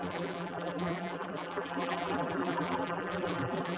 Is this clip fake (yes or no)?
yes